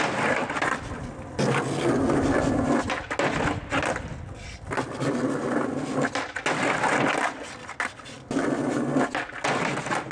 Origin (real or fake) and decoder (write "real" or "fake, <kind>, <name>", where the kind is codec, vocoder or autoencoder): real